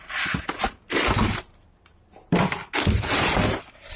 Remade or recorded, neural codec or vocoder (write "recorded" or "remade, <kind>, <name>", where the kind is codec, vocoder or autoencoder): recorded